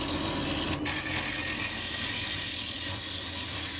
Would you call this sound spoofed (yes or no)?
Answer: no